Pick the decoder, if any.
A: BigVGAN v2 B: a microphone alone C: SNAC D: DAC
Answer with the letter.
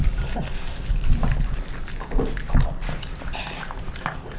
B